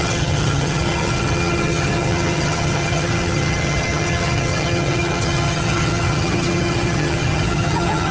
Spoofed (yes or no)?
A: yes